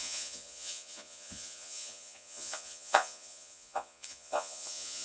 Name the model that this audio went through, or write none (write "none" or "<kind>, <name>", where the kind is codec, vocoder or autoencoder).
vocoder, Vocos